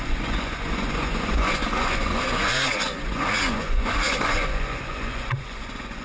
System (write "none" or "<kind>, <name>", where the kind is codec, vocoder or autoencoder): vocoder, Vocos